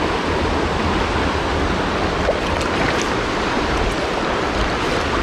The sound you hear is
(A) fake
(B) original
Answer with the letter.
B